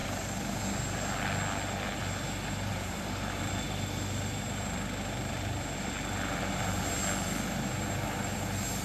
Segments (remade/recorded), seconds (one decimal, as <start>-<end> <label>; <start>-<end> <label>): 0.0-0.6 remade; 0.6-2.7 recorded; 2.7-3.5 remade; 3.5-8.8 recorded